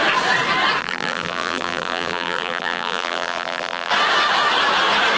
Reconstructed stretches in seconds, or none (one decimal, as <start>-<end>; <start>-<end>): 0.8-3.9